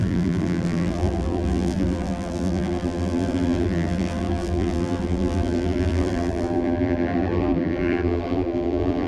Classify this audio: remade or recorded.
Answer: remade